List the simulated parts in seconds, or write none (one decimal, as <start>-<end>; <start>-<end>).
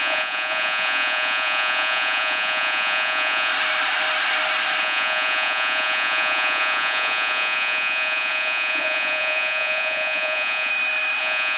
0.0-3.5; 4.8-10.7; 11.2-11.6